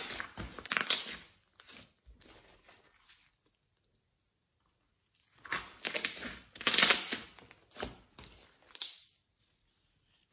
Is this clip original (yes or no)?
yes